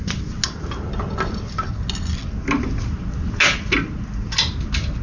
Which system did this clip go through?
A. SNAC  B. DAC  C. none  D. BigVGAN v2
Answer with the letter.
C